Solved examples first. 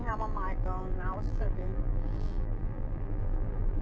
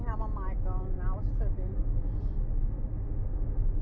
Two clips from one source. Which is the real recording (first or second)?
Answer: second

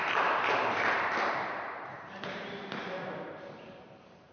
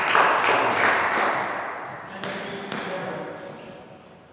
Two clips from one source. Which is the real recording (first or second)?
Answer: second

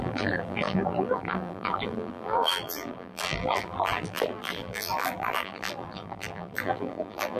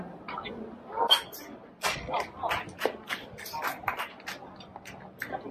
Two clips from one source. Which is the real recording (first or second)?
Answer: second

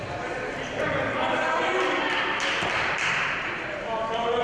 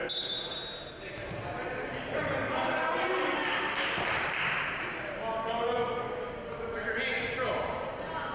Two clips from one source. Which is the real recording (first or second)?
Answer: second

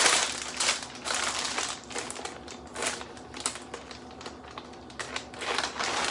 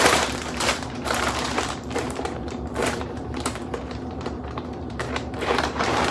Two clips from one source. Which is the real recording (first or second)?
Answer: first